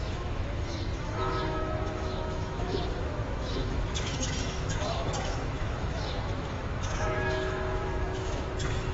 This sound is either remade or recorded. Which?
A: remade